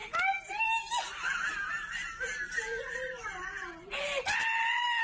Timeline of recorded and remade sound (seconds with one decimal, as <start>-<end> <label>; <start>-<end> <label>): 0.0-5.0 recorded